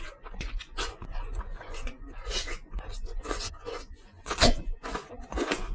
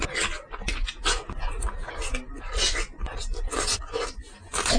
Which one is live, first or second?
second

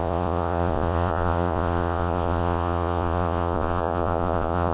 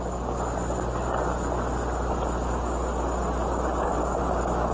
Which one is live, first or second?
second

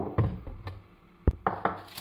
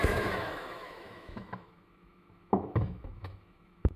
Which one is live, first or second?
first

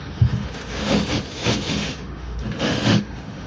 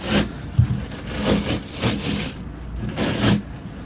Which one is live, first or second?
second